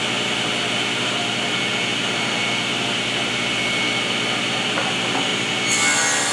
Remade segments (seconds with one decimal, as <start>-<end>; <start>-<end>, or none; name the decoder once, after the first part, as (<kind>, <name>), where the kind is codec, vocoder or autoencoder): none